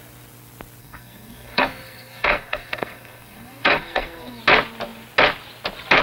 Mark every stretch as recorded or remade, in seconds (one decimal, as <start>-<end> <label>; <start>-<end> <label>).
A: 0.0-0.8 recorded; 0.8-4.4 remade; 4.4-6.0 recorded